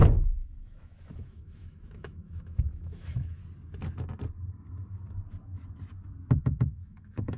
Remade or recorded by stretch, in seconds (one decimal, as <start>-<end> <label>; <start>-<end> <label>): 0.0-3.4 remade; 3.4-6.4 recorded; 6.4-7.4 remade